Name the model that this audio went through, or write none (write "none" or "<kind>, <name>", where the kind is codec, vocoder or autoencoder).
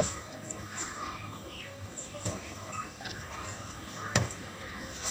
codec, DAC